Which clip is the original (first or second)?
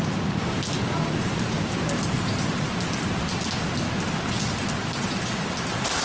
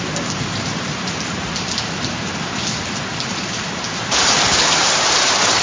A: first